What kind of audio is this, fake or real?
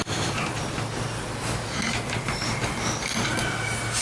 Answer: real